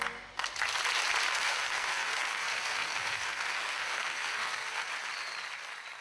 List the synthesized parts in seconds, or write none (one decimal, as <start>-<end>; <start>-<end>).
1.3-4.9